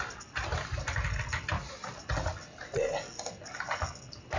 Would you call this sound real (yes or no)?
yes